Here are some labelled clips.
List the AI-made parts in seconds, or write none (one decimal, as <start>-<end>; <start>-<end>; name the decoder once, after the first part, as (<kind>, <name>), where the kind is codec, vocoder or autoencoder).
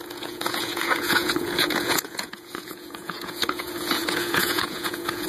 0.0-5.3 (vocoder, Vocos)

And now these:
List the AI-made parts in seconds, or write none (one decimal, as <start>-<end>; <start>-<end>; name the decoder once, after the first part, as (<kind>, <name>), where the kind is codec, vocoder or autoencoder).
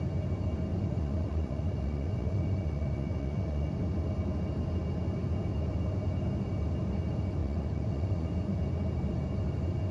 0.7-3.7 (vocoder, Vocos); 7.4-8.6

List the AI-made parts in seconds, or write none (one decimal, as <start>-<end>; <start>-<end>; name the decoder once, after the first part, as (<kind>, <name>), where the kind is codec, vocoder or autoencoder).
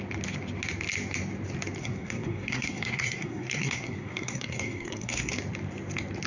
1.8-5.3 (codec, SNAC)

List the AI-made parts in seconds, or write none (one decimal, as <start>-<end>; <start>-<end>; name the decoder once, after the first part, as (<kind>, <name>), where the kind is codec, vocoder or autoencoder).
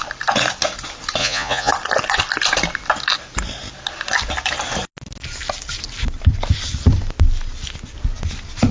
1.2-1.7 (vocoder, Vocos)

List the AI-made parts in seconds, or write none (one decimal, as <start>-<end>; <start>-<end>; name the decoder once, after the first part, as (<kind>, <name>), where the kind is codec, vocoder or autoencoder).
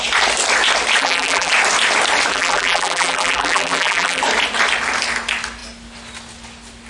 1.0-1.5 (vocoder, BigVGAN v2); 2.3-4.2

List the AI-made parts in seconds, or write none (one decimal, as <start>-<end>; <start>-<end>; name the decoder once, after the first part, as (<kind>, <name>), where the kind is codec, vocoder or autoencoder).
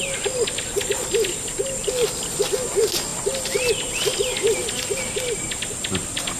none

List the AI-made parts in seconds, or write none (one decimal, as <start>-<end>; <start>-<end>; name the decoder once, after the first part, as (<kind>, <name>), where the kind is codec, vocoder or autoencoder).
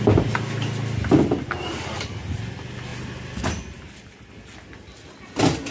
none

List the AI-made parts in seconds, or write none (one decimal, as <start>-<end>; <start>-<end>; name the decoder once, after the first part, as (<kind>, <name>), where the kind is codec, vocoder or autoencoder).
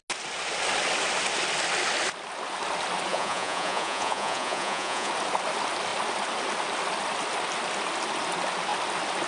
3.1-5.1 (vocoder, Vocos)